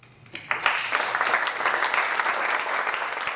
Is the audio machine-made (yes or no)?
no